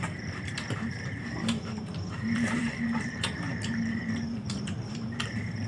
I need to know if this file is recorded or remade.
remade